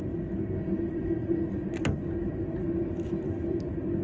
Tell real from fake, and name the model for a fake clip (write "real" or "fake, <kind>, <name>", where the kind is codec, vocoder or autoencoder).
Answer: real